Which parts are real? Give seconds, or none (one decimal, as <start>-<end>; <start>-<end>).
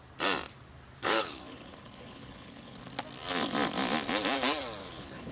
0.0-1.0; 2.8-4.8